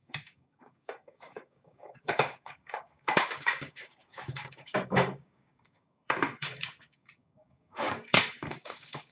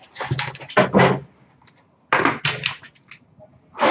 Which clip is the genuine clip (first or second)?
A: second